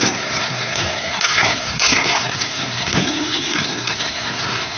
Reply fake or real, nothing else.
fake